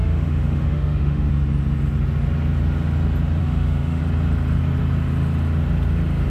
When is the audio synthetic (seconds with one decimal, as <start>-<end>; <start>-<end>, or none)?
0.0-1.3; 3.4-4.0